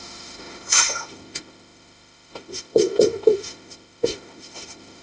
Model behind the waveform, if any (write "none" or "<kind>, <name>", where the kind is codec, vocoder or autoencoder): autoencoder, DAC-VAE